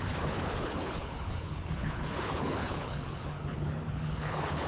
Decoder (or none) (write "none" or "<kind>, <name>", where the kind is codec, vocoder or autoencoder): codec, HILCodec